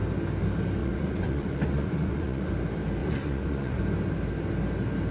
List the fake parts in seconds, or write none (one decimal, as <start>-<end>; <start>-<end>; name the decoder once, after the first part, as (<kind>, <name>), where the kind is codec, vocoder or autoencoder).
0.8-2.5 (vocoder, Vocos); 3.0-3.8